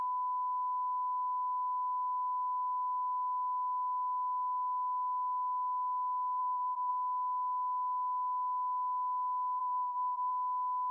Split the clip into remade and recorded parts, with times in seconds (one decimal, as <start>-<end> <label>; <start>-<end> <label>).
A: 0.0-6.4 recorded; 6.4-6.9 remade; 6.9-9.6 recorded; 9.6-10.3 remade; 10.3-10.9 recorded